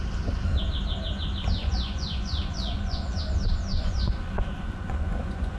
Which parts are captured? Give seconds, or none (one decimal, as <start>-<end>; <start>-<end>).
0.0-1.6; 3.2-3.7